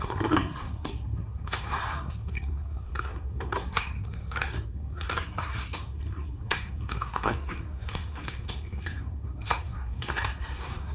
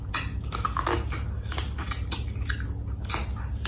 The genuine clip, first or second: second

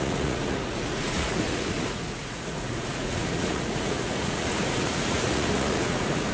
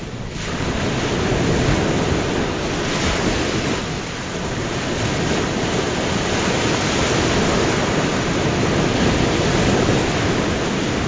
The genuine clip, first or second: second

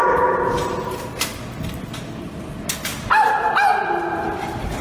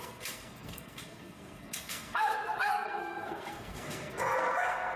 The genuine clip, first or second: first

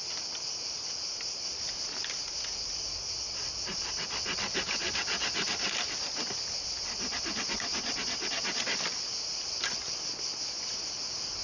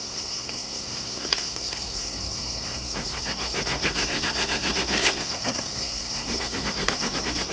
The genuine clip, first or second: first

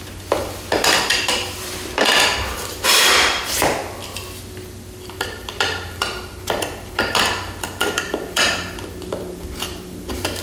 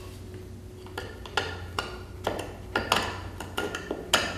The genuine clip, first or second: second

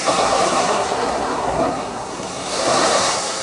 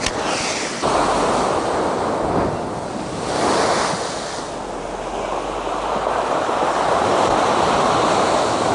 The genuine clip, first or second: second